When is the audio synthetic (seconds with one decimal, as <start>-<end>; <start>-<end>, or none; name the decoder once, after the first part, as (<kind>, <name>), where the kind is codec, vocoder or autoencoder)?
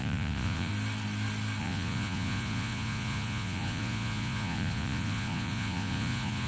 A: 0.0-0.7 (vocoder, Vocos); 1.6-6.5